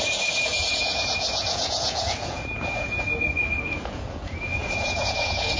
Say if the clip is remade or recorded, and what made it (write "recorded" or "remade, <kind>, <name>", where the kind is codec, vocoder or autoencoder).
remade, vocoder, Vocos